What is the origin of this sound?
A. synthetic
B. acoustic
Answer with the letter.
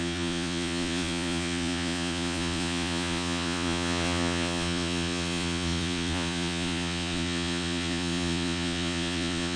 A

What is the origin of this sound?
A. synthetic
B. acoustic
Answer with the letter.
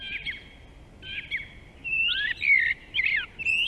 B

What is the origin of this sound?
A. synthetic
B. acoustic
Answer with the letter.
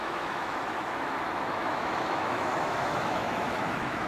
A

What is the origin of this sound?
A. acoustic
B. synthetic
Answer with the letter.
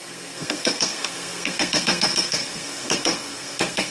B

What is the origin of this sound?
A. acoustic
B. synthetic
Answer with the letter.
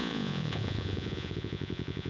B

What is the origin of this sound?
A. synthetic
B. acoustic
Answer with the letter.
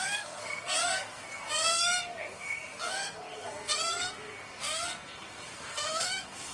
A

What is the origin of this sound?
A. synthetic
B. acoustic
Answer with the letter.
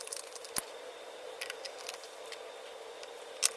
B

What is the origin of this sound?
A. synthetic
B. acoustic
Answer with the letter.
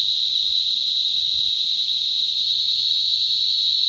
B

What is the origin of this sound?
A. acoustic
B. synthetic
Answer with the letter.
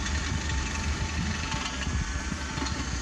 A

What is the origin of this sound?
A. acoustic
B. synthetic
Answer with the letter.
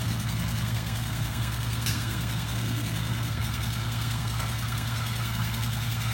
B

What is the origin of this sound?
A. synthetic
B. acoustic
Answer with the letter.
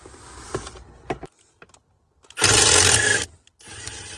B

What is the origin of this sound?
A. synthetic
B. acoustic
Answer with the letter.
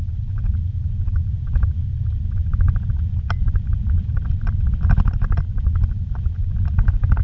B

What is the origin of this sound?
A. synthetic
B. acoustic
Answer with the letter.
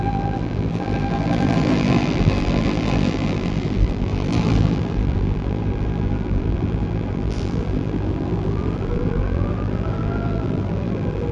A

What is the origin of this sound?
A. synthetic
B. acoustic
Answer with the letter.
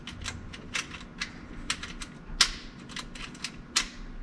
B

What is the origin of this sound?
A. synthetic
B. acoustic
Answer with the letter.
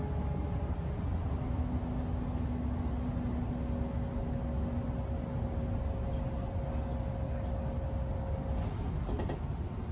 B